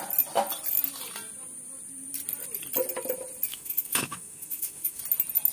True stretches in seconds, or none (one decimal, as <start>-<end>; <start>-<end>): 0.0-3.5; 5.0-5.5